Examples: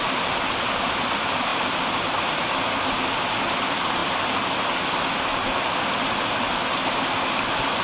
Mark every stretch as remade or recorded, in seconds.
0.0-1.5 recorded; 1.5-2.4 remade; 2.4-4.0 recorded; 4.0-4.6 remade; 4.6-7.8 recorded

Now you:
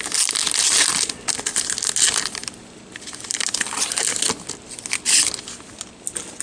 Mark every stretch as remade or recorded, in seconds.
0.0-6.4 recorded